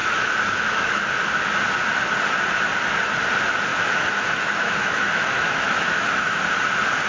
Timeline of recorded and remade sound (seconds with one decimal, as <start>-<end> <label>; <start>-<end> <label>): 0.0-1.0 remade; 1.0-3.7 recorded; 3.7-6.4 remade; 6.4-7.1 recorded